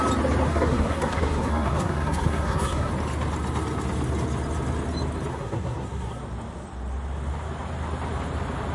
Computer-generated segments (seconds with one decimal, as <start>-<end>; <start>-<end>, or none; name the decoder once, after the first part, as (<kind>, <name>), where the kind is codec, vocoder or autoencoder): 0.5-2.9 (codec, SNAC); 5.3-6.2